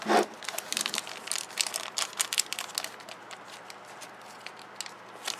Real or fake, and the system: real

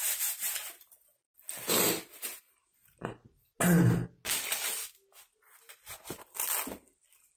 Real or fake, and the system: real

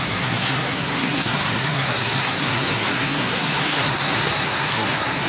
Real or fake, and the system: fake, codec, SNAC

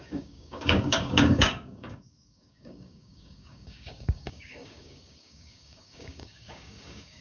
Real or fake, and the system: fake, codec, DAC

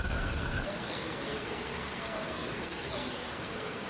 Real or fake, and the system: fake, codec, SNAC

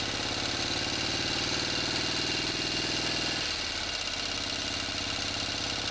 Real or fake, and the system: real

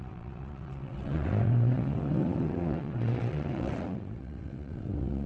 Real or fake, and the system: fake, vocoder, WaveNeXt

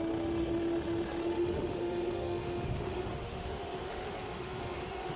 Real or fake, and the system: fake, autoencoder, DAC-VAE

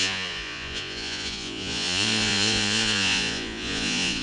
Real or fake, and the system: fake, vocoder, Vocos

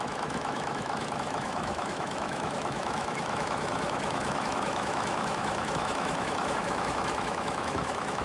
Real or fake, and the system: fake, autoencoder, DAC-VAE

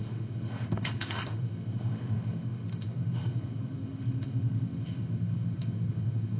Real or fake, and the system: fake, autoencoder, DAC-VAE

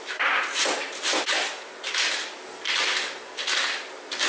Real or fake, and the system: real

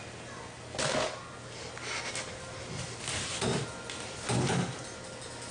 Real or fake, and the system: real